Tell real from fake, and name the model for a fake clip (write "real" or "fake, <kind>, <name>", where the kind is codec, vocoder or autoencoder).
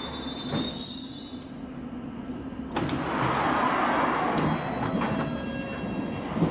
real